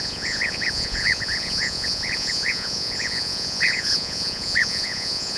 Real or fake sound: fake